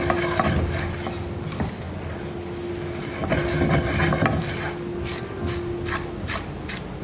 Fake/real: real